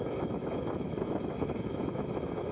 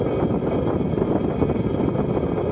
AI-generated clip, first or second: first